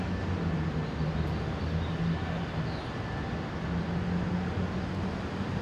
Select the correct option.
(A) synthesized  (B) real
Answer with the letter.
B